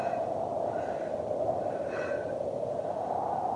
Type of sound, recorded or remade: recorded